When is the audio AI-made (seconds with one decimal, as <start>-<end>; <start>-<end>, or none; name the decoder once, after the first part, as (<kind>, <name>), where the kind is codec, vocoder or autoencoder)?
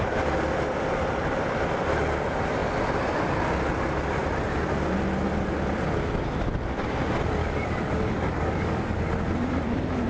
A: 7.4-9.0 (codec, DAC)